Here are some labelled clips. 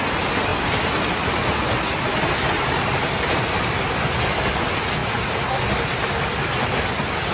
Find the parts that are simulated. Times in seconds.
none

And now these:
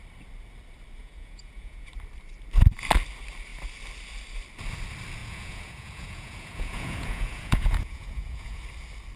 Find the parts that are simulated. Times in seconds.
1.0-1.9 (vocoder, Vocos); 5.2-8.6

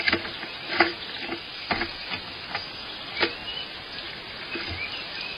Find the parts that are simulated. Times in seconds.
none

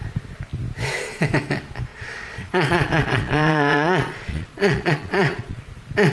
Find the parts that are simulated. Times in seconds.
1.9-5.6 (vocoder, Vocos)